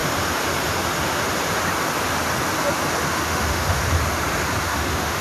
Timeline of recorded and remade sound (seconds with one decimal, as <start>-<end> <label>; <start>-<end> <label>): 0.0-3.1 recorded; 3.1-3.8 remade; 3.8-4.6 recorded; 4.6-5.2 remade